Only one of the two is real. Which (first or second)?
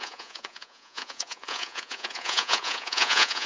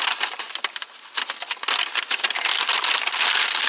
second